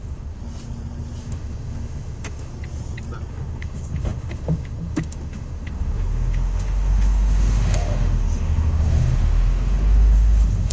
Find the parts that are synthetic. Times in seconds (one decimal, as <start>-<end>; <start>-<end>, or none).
0.0-0.4; 1.2-2.5; 3.3-10.7